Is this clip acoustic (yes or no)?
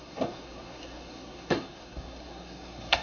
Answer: no